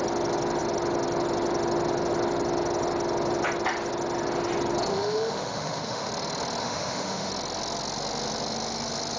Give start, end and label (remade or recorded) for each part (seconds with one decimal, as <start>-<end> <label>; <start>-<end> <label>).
0.0-4.9 recorded; 4.9-6.1 remade; 6.1-6.6 recorded; 6.6-7.3 remade; 7.3-9.2 recorded